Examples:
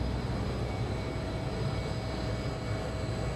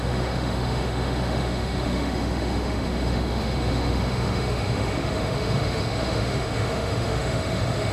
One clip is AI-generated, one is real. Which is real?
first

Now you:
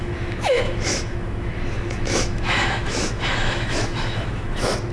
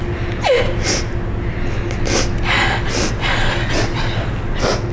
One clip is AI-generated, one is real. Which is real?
second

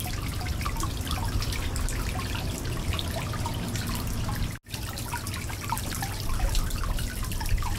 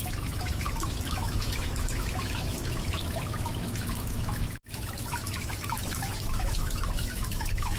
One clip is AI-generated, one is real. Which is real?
first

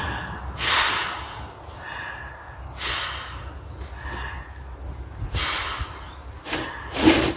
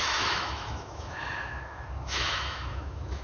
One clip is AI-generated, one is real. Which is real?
first